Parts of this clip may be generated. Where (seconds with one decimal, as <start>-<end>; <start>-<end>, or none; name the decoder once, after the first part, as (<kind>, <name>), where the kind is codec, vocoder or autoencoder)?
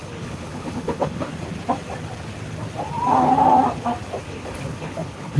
0.0-1.3 (codec, HILCodec); 4.2-5.4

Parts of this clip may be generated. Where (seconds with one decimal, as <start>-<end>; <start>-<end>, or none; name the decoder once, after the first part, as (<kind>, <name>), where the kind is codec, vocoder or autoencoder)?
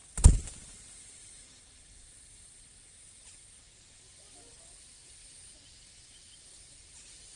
none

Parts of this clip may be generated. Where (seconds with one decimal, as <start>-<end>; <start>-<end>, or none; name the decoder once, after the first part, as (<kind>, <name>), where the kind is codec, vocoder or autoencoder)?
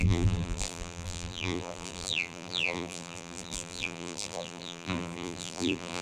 0.0-6.0 (vocoder, BigVGAN v2)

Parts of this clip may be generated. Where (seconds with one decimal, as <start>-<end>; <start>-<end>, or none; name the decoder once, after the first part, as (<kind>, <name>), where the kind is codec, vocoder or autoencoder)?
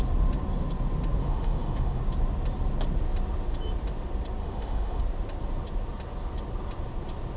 1.2-2.0 (autoencoder, DAC-VAE); 4.4-5.0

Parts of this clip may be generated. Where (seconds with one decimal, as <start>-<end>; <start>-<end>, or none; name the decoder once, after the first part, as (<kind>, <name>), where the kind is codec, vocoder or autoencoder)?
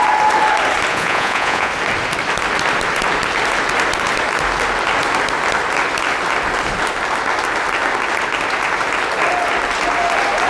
0.9-1.7 (vocoder, Vocos)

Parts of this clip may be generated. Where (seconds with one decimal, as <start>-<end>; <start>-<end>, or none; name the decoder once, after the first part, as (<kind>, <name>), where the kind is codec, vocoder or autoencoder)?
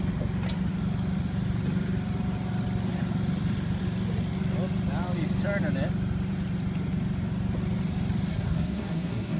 8.3-9.4 (codec, SNAC)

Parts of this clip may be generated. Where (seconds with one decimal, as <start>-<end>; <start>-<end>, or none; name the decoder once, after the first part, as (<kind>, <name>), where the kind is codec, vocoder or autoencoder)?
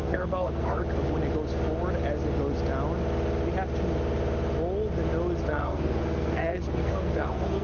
0.0-0.8 (codec, SNAC); 5.4-7.6